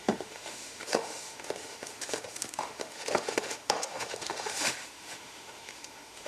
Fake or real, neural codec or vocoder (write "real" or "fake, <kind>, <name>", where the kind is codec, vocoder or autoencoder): fake, autoencoder, DAC-VAE